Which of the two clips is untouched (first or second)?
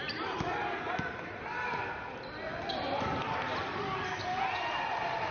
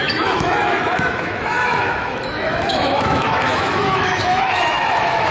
first